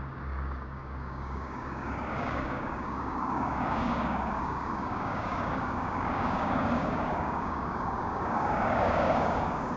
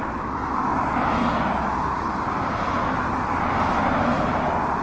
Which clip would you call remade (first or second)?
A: first